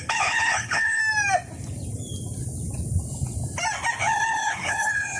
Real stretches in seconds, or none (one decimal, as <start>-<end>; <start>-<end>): 1.0-4.0